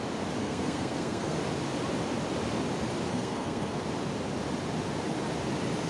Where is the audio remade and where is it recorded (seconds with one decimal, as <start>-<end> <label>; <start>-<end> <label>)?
0.0-0.4 recorded; 0.4-1.4 remade; 1.4-3.1 recorded; 3.1-3.8 remade; 3.8-5.9 recorded